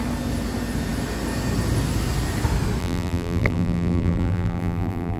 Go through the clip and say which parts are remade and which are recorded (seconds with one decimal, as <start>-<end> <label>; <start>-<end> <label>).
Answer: 0.0-2.8 recorded; 2.8-5.2 remade